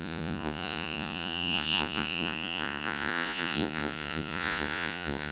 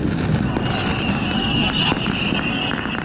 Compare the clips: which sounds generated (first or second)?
first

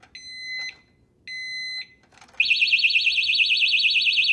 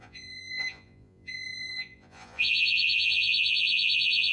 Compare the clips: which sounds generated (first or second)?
second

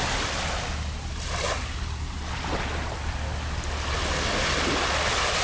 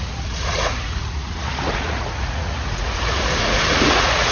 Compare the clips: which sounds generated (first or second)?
second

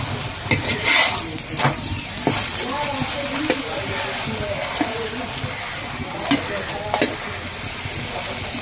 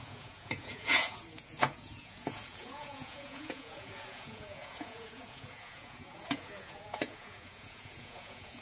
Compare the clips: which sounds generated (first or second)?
second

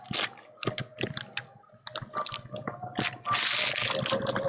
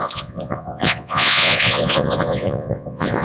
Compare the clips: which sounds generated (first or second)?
second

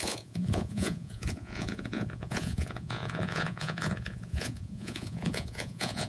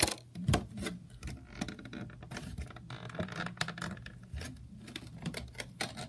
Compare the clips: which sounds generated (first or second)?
first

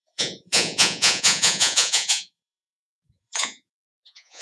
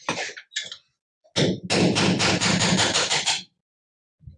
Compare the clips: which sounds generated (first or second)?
first